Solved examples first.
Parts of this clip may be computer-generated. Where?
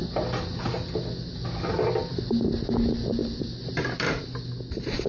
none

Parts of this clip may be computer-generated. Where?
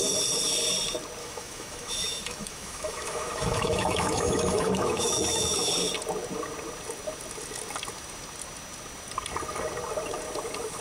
1.2-5.7 (autoencoder, DAC-VAE)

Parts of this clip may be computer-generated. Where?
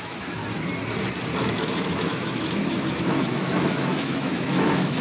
0.0-0.4 (autoencoder, DAC-VAE); 1.4-5.0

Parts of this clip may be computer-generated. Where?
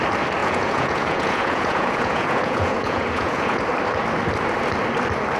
0.4-3.6 (vocoder, Vocos)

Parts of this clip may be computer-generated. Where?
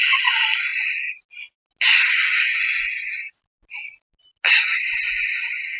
none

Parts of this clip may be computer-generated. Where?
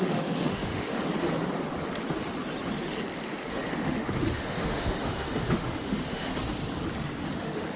0.0-1.0 (autoencoder, DAC-VAE); 3.5-6.3; 7.2-7.8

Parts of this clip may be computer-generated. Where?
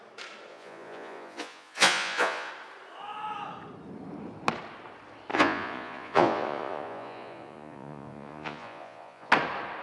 0.5-2.5 (vocoder, Vocos); 5.3-9.3